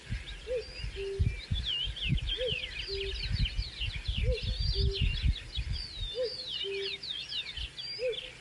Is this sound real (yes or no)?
yes